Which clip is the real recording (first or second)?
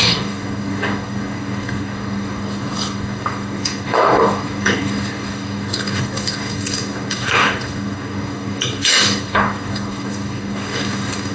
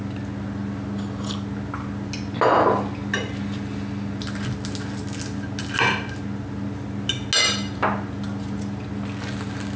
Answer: second